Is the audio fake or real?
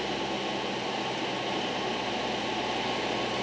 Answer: real